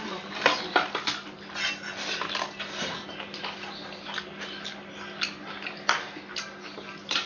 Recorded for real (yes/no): yes